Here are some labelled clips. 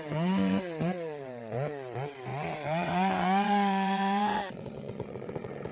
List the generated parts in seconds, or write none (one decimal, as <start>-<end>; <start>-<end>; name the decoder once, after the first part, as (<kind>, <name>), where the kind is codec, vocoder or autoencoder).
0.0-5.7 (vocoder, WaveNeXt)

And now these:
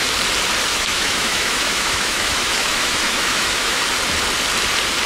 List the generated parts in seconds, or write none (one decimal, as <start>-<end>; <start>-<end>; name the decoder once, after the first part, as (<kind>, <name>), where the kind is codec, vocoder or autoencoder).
0.7-3.8 (autoencoder, DAC-VAE)

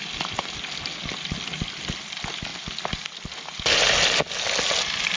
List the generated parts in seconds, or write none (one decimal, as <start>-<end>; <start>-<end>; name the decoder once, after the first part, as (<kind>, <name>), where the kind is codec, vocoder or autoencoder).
none

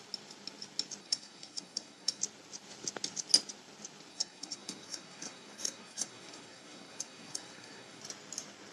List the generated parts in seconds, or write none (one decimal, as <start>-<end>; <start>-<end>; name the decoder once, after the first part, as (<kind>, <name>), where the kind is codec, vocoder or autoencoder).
1.0-2.2 (codec, SNAC); 4.1-8.0

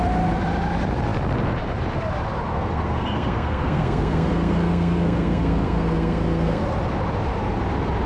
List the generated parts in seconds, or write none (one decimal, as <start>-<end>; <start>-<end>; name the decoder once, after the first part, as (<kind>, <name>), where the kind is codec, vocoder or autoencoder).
2.5-6.6 (codec, SNAC)

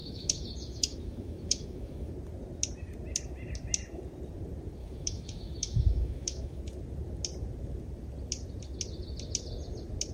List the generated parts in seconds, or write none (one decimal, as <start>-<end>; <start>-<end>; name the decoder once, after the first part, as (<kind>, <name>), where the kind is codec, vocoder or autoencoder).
0.0-2.1 (autoencoder, DAC-VAE); 4.8-6.6

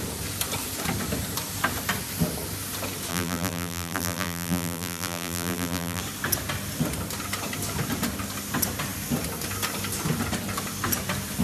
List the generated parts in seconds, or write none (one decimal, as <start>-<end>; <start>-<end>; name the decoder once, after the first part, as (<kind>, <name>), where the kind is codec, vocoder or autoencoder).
3.1-6.0 (vocoder, BigVGAN v2)